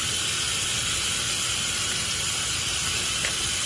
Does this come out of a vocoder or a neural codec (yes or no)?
no